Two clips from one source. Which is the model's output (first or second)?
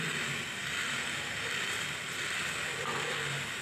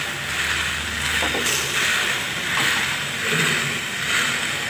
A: second